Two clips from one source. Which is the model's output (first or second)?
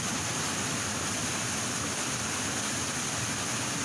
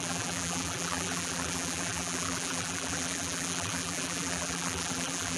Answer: second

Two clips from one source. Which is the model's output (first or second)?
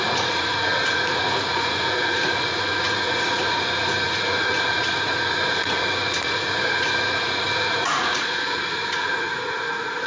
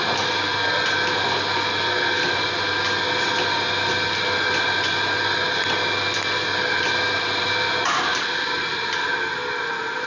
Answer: first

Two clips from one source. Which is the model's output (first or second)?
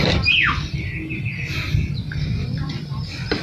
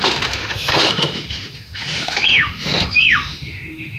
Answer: second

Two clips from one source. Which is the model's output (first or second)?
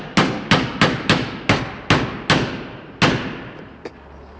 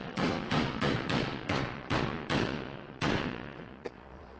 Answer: second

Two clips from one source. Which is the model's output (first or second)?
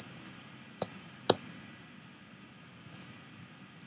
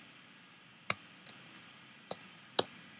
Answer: second